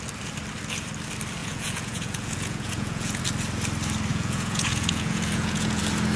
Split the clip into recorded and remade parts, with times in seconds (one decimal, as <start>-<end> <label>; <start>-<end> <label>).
0.0-1.4 recorded; 1.4-3.2 remade; 3.2-4.1 recorded; 4.1-5.8 remade; 5.8-6.2 recorded